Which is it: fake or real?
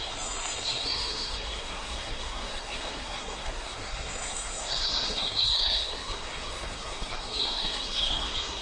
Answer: fake